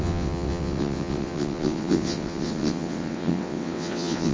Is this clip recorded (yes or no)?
no